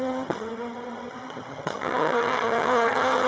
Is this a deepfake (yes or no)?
yes